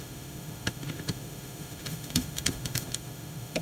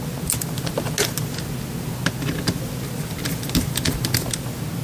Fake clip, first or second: first